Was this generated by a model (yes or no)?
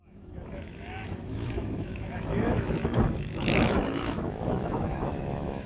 yes